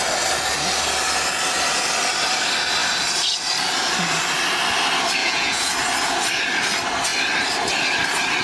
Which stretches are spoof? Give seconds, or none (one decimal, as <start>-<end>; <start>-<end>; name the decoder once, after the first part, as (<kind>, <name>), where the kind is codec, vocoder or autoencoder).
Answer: 5.2-5.7 (vocoder, Vocos)